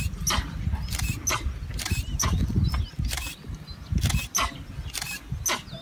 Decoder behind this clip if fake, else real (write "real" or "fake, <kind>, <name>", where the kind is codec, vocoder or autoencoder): real